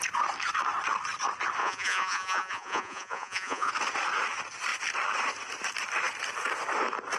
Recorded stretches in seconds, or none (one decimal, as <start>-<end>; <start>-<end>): 0.0-1.6; 3.7-7.2